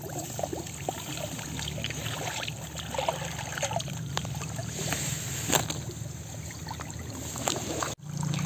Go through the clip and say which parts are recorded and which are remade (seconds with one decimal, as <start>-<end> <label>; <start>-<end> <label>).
0.0-8.5 recorded